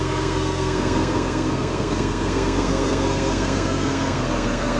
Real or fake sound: fake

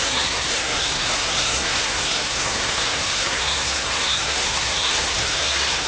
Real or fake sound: fake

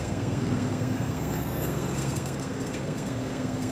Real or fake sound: fake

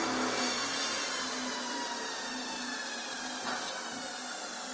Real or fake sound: real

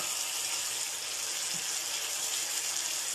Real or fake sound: real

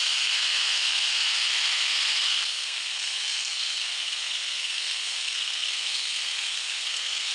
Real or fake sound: fake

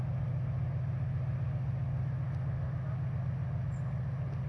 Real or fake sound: real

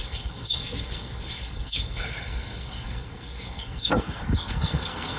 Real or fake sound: fake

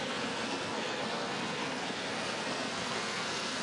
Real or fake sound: fake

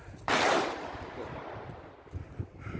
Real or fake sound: real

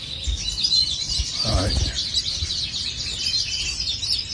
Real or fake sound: real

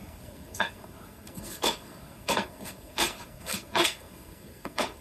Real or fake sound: fake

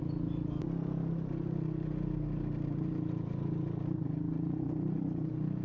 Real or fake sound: real